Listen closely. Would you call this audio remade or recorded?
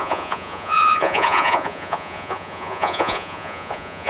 remade